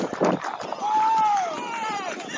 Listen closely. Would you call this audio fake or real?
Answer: real